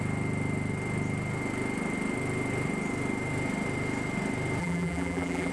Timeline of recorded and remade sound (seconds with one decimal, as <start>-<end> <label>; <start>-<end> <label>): 0.0-4.6 recorded; 4.6-5.5 remade